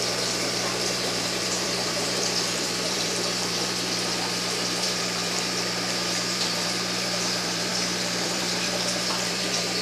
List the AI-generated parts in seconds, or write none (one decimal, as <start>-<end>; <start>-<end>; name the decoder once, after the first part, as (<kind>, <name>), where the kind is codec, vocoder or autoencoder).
0.0-9.8 (vocoder, BigVGAN v2)